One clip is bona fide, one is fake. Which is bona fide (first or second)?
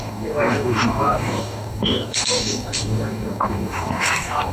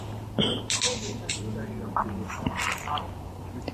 second